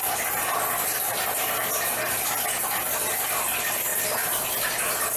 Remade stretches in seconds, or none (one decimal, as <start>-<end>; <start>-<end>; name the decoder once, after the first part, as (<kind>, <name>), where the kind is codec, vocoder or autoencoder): 3.9-4.4 (vocoder, BigVGAN v2)